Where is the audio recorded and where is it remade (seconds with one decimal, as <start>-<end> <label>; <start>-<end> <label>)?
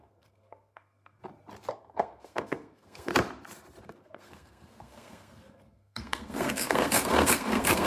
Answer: 0.0-1.2 remade; 1.2-1.7 recorded; 1.7-3.1 remade; 3.1-3.9 recorded; 3.9-7.9 remade